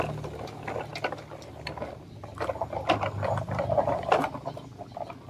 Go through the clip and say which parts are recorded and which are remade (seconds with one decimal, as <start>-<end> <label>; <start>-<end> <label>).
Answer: 0.0-5.3 recorded